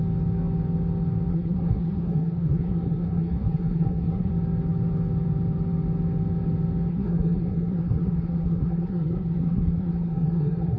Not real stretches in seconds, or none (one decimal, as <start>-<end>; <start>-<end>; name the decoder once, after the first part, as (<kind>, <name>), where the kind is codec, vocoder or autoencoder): 1.3-4.3 (codec, SNAC); 6.9-10.8